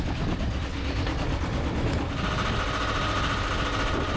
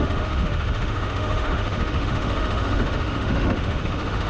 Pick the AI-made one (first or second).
second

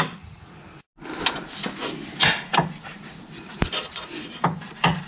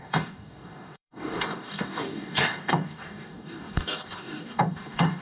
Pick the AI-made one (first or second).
second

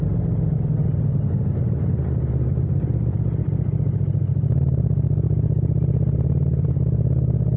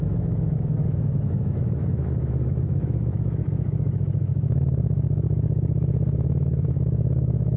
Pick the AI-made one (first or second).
second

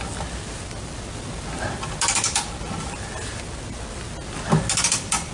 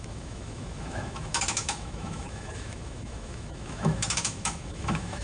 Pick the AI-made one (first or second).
second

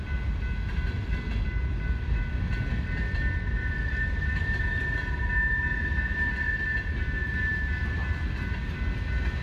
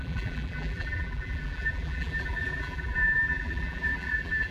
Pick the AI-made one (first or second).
second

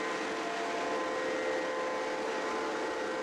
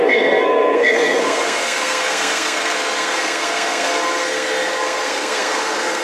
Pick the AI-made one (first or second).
second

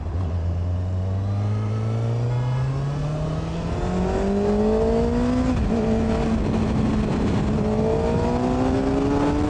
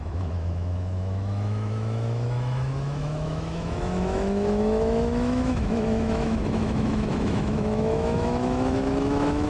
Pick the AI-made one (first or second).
second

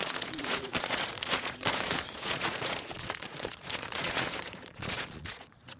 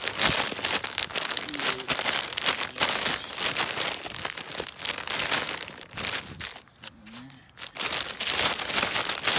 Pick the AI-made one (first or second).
first